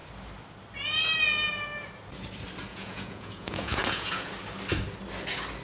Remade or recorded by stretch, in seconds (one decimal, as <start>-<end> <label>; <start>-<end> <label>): 0.0-2.7 recorded; 2.7-4.3 remade; 4.3-5.6 recorded

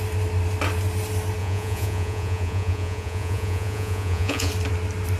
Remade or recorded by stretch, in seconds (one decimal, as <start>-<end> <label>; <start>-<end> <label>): 0.0-1.4 recorded; 1.4-4.5 remade; 4.5-5.2 recorded

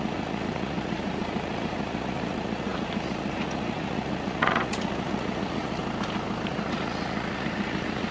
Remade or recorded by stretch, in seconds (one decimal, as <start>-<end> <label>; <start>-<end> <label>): 0.0-5.8 remade; 5.8-6.5 recorded; 6.5-8.1 remade

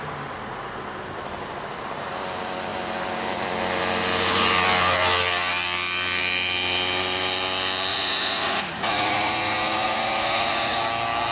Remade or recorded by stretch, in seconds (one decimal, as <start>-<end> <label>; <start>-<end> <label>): 0.0-7.9 recorded; 7.9-10.8 remade; 10.8-11.3 recorded

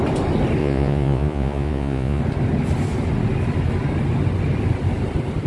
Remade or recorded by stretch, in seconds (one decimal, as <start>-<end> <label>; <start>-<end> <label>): 0.0-0.6 recorded; 0.6-2.2 remade; 2.2-5.5 recorded

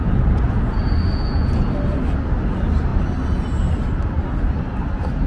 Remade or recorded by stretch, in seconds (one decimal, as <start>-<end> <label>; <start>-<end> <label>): 0.0-1.7 remade; 1.7-5.3 recorded

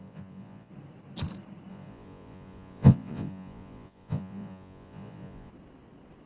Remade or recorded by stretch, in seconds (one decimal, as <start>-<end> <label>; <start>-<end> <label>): 0.0-0.7 remade; 0.7-1.7 recorded; 1.7-5.5 remade; 5.5-6.3 recorded